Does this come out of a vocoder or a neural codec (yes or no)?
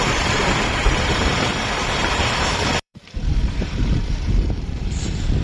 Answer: yes